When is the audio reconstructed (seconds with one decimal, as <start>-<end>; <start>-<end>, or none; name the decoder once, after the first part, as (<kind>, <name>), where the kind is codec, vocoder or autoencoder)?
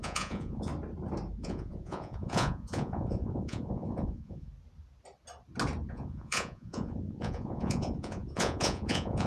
0.0-0.7 (vocoder, Vocos); 1.4-4.5; 5.9-9.3